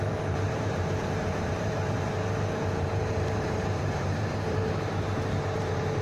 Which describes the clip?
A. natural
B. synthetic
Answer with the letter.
B